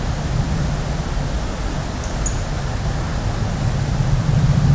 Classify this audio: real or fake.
real